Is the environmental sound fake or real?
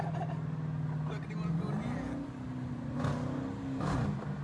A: real